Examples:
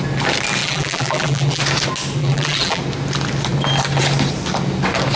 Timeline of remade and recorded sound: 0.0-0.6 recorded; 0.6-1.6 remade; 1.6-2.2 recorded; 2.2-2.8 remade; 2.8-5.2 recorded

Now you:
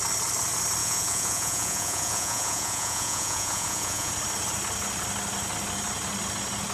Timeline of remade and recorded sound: 0.0-0.8 recorded; 0.8-4.1 remade; 4.1-6.7 recorded

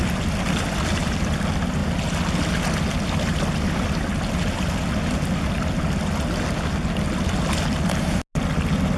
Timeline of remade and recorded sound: 0.0-9.0 recorded

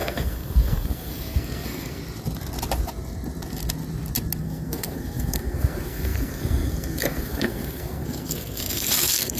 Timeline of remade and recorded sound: 0.0-2.0 remade; 2.0-4.4 recorded; 4.4-9.4 remade

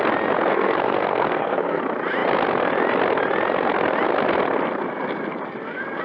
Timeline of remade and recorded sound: 0.0-0.5 recorded; 0.5-1.8 remade; 1.8-6.0 recorded

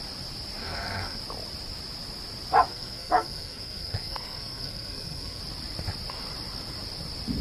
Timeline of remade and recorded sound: 0.0-0.6 recorded; 0.6-1.2 remade; 1.2-2.7 recorded; 2.7-5.4 remade; 5.4-7.4 recorded